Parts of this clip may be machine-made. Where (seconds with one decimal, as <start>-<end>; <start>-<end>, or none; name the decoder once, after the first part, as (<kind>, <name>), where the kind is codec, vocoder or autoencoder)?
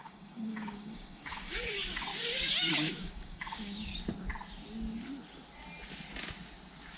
0.0-2.1 (codec, DAC); 2.7-3.9